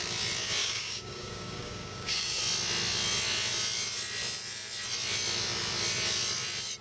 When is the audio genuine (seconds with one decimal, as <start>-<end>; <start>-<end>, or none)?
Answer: 0.0-0.6; 2.4-6.8